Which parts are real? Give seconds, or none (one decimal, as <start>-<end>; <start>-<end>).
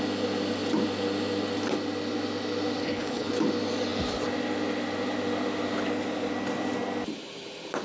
0.0-2.8; 3.3-7.8